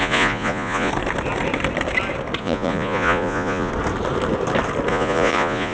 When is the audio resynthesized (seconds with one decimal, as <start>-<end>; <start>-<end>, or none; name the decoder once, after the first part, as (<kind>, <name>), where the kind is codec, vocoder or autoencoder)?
0.0-0.9 (vocoder, Vocos); 2.4-3.7; 4.9-5.7